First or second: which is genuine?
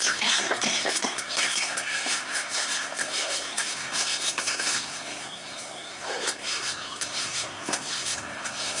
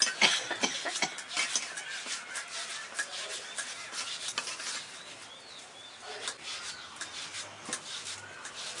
second